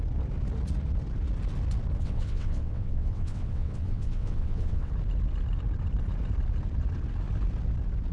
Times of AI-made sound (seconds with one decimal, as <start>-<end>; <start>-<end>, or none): 2.0-4.9